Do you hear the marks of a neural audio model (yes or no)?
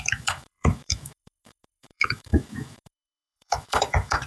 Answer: yes